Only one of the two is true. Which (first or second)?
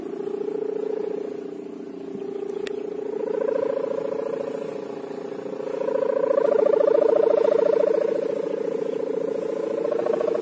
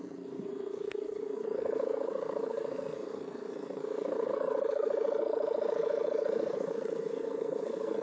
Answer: first